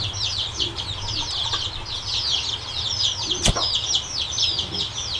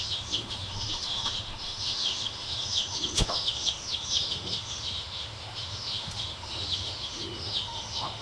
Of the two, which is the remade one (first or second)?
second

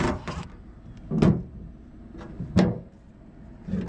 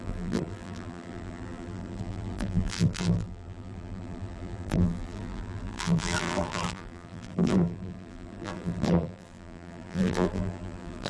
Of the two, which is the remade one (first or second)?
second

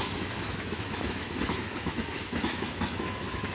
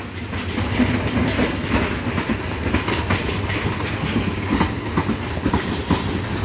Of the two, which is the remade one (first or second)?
first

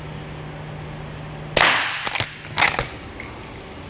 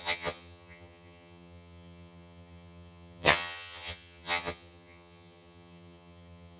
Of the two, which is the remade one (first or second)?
second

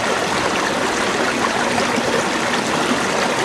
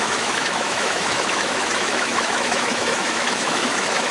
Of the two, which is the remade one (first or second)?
second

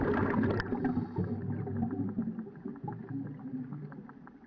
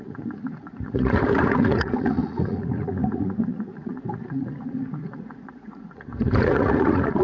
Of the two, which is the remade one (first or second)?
second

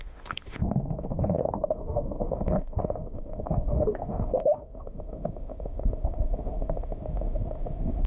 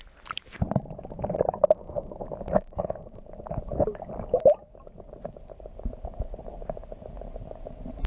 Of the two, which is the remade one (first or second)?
first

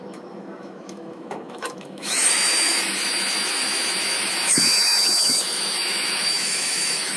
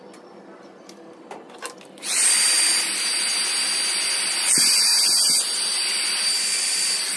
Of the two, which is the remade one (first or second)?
first